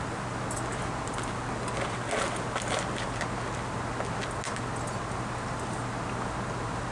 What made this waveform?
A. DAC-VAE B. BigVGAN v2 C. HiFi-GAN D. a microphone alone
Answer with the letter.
D